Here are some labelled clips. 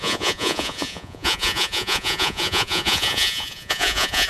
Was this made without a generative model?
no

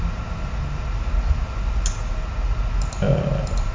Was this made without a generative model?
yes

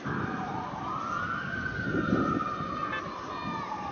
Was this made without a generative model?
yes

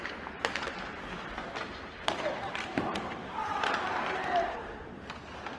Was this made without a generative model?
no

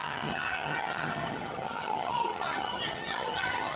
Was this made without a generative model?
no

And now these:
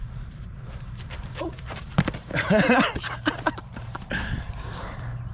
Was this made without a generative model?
no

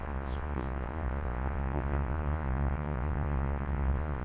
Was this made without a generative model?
no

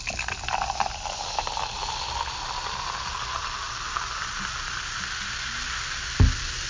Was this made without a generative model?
yes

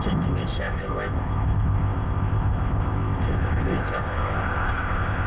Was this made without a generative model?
no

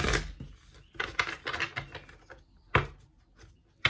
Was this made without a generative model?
yes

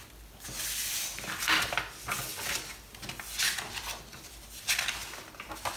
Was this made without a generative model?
yes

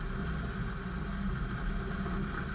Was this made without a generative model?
yes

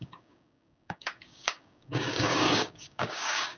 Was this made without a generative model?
no